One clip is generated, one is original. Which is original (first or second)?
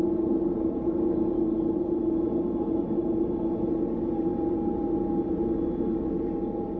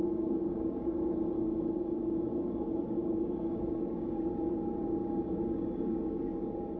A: first